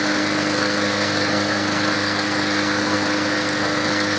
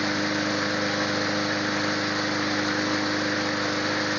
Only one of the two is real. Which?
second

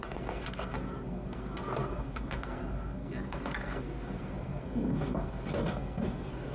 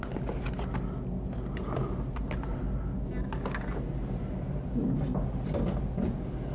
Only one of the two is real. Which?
second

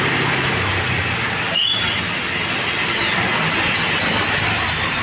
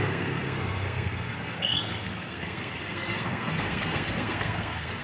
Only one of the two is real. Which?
first